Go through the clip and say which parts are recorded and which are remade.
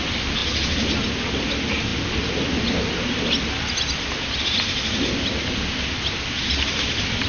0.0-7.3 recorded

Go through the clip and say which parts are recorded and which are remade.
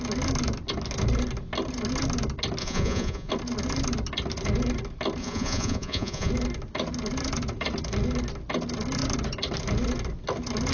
0.0-2.6 recorded; 2.6-3.3 remade; 3.3-5.2 recorded; 5.2-6.3 remade; 6.3-10.7 recorded